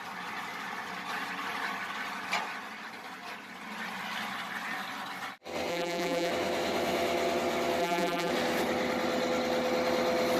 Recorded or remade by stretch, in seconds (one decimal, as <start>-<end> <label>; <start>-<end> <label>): 0.0-5.7 recorded; 5.7-6.3 remade; 6.3-7.8 recorded; 7.8-8.3 remade; 8.3-10.4 recorded